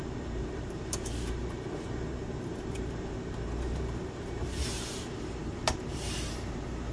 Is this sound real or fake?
fake